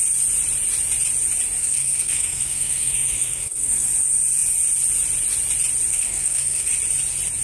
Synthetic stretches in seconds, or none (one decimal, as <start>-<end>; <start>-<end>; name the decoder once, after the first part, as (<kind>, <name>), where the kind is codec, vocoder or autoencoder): 1.6-3.9 (codec, SNAC); 5.9-6.6